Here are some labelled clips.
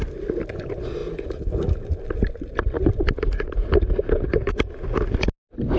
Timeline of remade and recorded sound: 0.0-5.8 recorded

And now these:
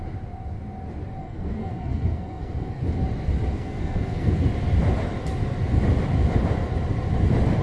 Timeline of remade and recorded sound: 0.0-1.2 recorded; 1.2-2.8 remade; 2.8-3.5 recorded; 3.5-4.4 remade; 4.4-7.6 recorded

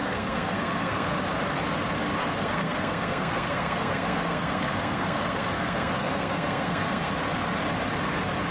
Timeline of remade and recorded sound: 0.0-1.2 remade; 1.2-2.2 recorded; 2.2-7.1 remade; 7.1-8.5 recorded